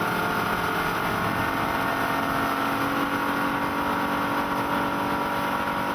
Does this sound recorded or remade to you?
recorded